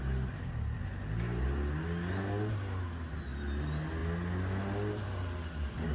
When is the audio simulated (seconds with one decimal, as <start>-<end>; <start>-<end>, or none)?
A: none